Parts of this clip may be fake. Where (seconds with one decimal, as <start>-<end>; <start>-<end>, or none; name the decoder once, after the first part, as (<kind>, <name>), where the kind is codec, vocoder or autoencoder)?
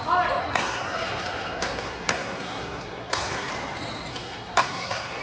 0.4-3.5 (codec, SNAC); 4.1-5.2